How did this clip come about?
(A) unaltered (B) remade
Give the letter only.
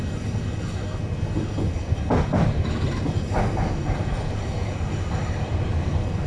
A